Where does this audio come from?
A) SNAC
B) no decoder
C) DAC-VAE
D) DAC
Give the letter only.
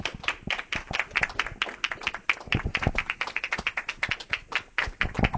B